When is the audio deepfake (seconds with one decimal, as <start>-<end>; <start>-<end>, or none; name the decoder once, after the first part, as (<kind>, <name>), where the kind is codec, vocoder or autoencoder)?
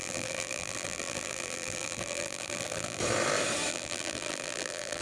0.0-3.0 (vocoder, BigVGAN v2); 3.7-5.0